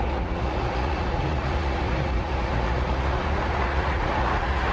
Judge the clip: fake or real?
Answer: fake